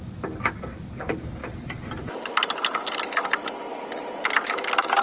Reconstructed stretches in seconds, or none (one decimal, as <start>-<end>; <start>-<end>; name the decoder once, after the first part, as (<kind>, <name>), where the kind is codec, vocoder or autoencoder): none